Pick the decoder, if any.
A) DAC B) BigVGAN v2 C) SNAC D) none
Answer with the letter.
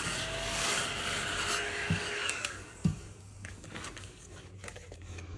A